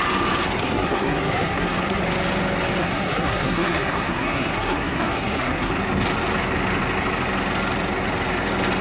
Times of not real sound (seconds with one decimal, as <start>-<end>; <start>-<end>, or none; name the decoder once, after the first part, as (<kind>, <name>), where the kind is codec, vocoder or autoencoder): 0.6-2.0 (codec, SNAC); 2.8-5.7